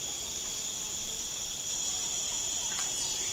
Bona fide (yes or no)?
no